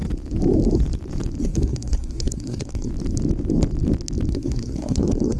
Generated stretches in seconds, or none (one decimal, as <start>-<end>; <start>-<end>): 1.4-2.9; 4.3-5.4